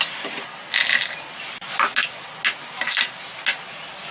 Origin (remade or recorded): recorded